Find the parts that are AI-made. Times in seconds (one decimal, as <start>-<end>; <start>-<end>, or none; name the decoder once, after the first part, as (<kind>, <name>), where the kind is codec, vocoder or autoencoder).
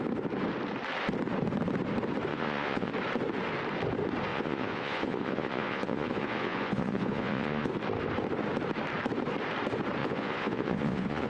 2.3-2.9 (vocoder, Vocos); 4.3-7.7; 10.0-11.3